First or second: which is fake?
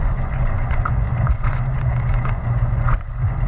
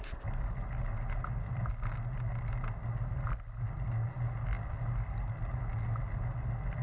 first